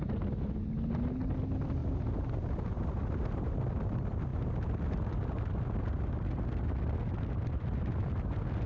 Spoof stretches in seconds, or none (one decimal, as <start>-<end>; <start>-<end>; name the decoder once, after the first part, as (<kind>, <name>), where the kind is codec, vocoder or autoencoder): none